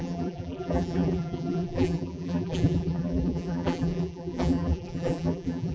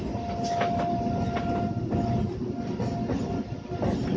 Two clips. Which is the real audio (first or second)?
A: second